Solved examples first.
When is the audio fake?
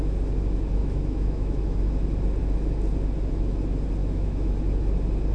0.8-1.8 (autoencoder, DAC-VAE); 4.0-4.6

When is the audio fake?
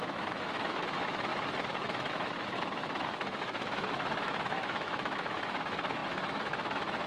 0.0-1.3 (autoencoder, DAC-VAE); 1.8-7.1